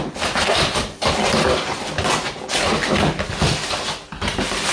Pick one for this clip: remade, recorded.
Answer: recorded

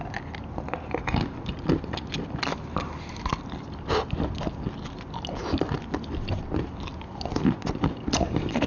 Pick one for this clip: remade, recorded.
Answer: recorded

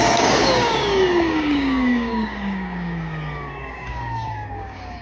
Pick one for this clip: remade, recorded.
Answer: remade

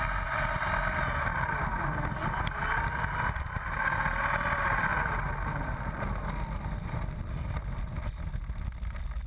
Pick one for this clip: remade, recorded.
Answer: recorded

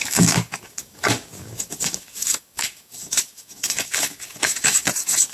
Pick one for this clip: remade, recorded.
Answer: remade